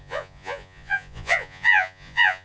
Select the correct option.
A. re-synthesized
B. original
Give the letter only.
A